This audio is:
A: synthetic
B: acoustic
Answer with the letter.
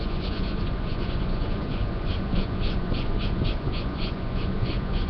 A